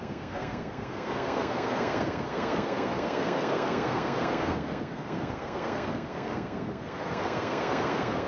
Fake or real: fake